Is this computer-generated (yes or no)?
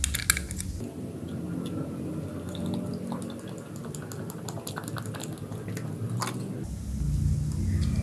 no